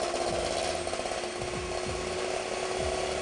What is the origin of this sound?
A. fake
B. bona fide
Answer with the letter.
B